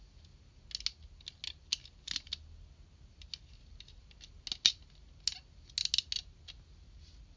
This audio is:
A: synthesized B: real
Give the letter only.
B